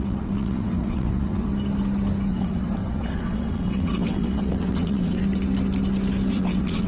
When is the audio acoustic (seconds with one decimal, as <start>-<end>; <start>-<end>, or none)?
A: 1.5-2.3; 5.2-6.3